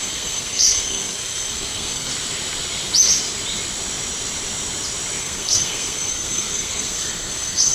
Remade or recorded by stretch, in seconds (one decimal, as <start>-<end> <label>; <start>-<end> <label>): 0.0-2.1 remade; 2.1-5.2 recorded; 5.2-7.7 remade